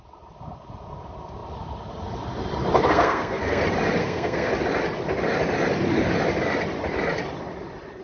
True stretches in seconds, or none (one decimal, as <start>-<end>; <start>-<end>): 0.0-2.9; 3.6-4.0; 4.5-8.0